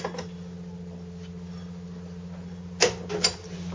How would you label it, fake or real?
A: real